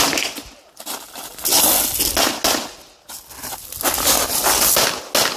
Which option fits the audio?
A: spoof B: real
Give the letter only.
B